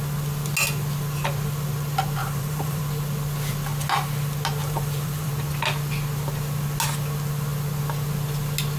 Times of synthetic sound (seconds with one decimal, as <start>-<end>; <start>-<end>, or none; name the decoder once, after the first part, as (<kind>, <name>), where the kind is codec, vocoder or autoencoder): 2.2-2.8 (vocoder, BigVGAN v2); 4.6-5.3